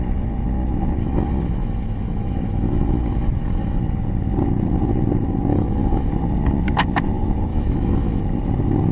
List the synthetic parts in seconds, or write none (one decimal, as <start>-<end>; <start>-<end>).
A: 1.0-3.8; 5.5-6.1; 7.5-8.2